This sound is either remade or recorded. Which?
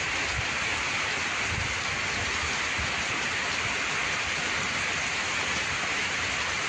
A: recorded